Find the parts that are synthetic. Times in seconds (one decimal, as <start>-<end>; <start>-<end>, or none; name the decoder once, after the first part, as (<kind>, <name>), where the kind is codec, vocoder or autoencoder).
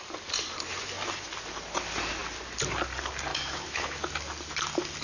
3.3-4.1 (autoencoder, DAC-VAE)